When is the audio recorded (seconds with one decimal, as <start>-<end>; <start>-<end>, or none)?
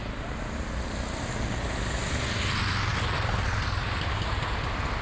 0.0-5.0